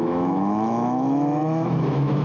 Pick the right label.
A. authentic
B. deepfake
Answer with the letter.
B